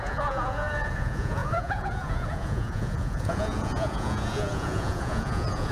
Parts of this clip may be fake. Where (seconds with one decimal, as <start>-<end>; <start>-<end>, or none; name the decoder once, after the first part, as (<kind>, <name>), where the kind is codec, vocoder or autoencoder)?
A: 0.0-5.7 (vocoder, Vocos)